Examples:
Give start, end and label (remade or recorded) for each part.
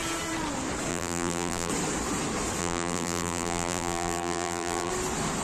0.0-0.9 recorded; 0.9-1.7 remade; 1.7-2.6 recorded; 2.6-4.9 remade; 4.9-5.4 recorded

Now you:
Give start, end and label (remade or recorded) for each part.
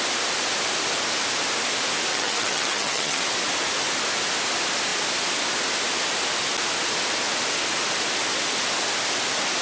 0.0-2.1 recorded; 2.1-3.2 remade; 3.2-9.6 recorded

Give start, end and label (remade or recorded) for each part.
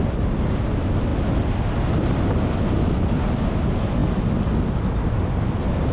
0.0-5.9 recorded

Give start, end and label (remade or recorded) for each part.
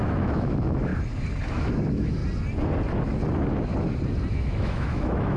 0.0-0.9 remade; 0.9-1.5 recorded; 1.5-2.2 remade; 2.2-4.3 recorded; 4.3-5.4 remade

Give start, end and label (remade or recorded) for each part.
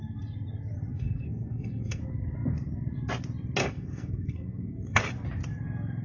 0.0-0.9 recorded; 0.9-2.0 remade; 2.0-3.6 recorded; 3.6-5.0 remade; 5.0-6.0 recorded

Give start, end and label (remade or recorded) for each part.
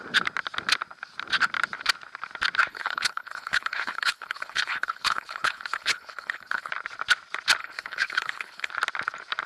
0.0-2.7 recorded; 2.7-6.7 remade; 6.7-7.6 recorded; 7.6-8.7 remade; 8.7-9.5 recorded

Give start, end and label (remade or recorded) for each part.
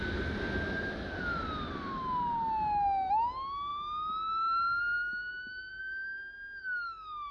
0.0-6.6 recorded; 6.6-7.3 remade